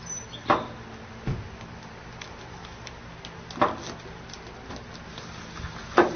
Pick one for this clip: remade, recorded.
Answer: recorded